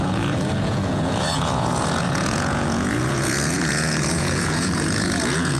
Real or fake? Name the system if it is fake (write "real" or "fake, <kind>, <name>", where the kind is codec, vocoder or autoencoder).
fake, vocoder, Vocos